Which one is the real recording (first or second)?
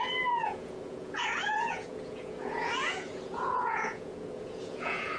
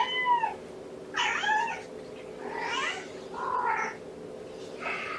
second